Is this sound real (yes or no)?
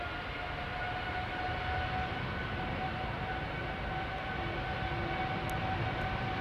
yes